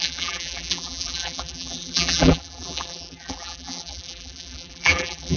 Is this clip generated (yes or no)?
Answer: yes